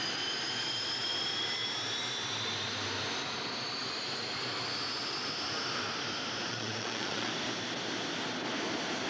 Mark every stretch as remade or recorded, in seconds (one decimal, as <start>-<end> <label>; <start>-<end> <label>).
0.0-6.5 recorded; 6.5-7.3 remade; 7.3-9.1 recorded